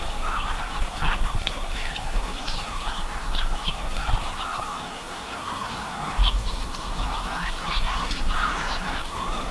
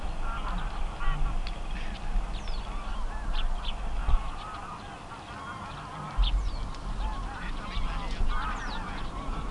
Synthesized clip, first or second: first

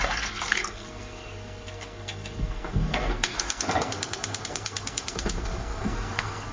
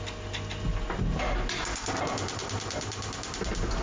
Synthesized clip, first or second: first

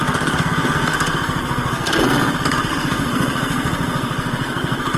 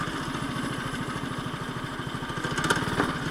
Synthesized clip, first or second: first